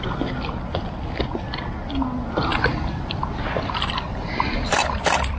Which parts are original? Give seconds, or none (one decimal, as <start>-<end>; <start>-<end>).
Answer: 0.0-5.4